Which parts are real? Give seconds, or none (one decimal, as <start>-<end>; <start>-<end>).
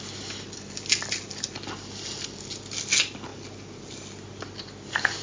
0.0-5.2